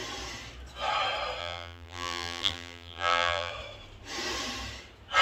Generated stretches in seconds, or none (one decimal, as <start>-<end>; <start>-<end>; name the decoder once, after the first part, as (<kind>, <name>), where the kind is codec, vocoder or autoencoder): 1.4-3.5 (vocoder, BigVGAN v2)